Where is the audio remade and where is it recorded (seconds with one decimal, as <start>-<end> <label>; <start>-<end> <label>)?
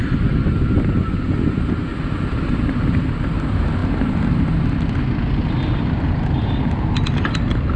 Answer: 0.0-7.8 recorded